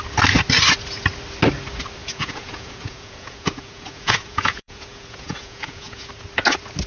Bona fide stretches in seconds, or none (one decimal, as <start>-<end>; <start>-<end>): 0.0-2.0; 6.1-6.9